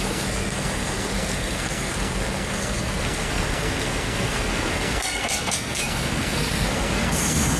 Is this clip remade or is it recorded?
remade